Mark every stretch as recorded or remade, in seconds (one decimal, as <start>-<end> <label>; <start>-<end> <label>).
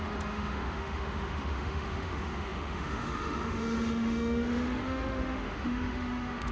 0.0-6.5 remade